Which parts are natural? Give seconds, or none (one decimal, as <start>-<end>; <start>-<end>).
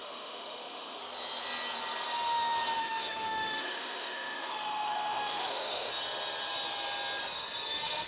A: 1.0-2.8; 5.9-8.1